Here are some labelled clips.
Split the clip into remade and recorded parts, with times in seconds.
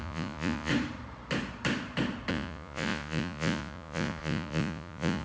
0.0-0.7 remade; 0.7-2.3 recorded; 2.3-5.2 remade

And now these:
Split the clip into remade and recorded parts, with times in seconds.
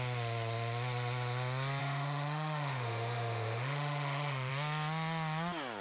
0.0-1.8 recorded; 1.8-4.5 remade; 4.5-5.8 recorded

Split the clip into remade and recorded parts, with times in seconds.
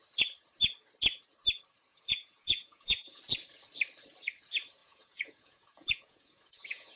0.0-1.9 recorded; 1.9-3.2 remade; 3.2-4.8 recorded; 4.8-7.0 remade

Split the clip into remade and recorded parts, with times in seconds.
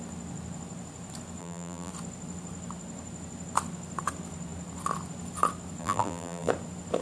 0.0-1.4 recorded; 1.4-1.9 remade; 1.9-5.8 recorded; 5.8-6.5 remade; 6.5-7.0 recorded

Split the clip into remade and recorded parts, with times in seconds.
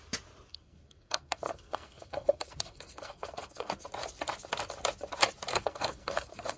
0.0-0.5 recorded; 0.5-3.9 remade; 3.9-5.5 recorded; 5.5-6.6 remade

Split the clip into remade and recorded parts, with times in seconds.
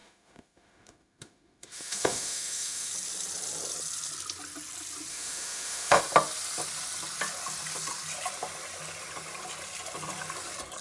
0.0-2.9 remade; 2.9-5.1 recorded; 5.1-6.0 remade; 6.0-10.8 recorded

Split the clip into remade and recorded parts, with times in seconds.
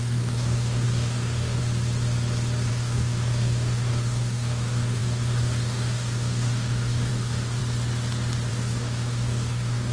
0.0-1.6 remade; 1.6-2.7 recorded; 2.7-7.6 remade; 7.6-8.5 recorded; 8.5-9.9 remade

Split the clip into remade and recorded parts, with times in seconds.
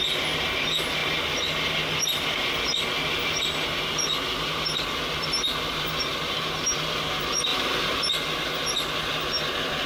0.0-7.5 recorded; 7.5-8.1 remade; 8.1-9.9 recorded